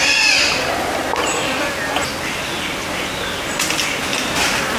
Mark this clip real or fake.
real